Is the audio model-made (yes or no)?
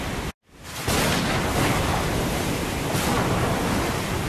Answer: no